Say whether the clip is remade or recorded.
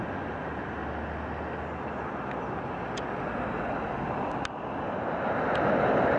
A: recorded